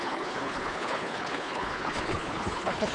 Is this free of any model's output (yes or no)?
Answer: no